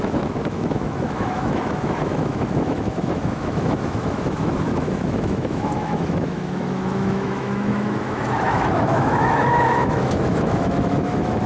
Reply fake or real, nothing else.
fake